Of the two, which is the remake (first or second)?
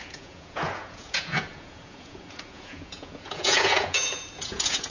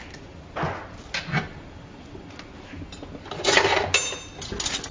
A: first